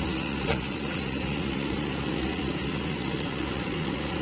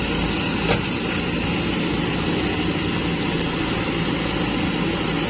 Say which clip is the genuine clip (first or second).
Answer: second